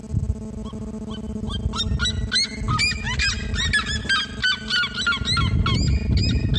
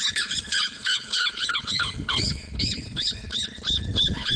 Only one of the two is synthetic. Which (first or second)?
second